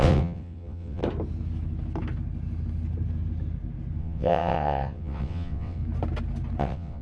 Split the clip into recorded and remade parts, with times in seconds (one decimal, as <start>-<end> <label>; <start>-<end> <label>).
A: 0.0-1.0 remade; 1.0-4.0 recorded; 4.0-5.8 remade; 5.8-6.6 recorded; 6.6-7.0 remade